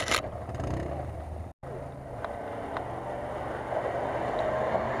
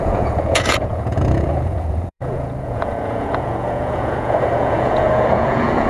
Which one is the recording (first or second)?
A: first